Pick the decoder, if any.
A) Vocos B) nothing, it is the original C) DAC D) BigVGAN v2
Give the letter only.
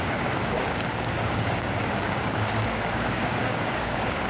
C